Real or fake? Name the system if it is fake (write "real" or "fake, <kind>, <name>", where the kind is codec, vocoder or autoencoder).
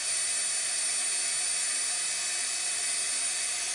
real